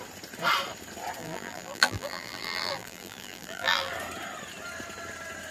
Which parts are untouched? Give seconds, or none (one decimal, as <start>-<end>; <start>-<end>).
0.0-1.2; 3.9-5.5